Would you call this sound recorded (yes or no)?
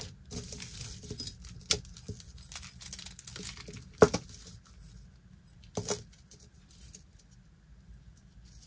yes